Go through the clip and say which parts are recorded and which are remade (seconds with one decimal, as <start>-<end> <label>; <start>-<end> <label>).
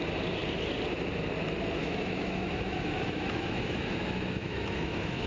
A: 0.0-1.8 recorded; 1.8-5.3 remade